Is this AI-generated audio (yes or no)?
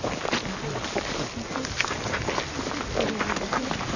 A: no